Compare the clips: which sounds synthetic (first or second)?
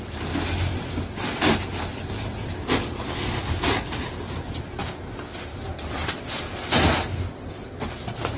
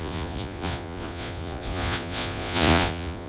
second